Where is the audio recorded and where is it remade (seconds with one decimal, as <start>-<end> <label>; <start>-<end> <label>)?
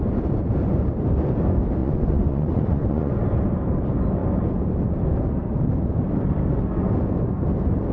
0.0-1.8 recorded; 1.8-3.2 remade; 3.2-7.9 recorded